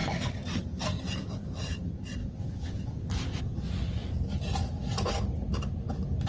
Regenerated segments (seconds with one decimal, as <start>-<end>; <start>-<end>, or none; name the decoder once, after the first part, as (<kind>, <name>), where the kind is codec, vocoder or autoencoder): 2.2-3.4 (vocoder, BigVGAN v2)